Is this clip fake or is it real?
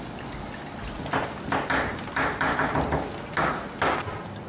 real